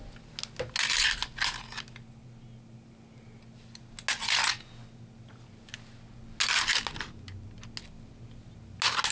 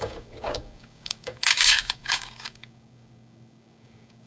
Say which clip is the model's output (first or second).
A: second